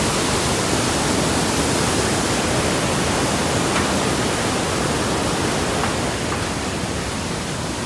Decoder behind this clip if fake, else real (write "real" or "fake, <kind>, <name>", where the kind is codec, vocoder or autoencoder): real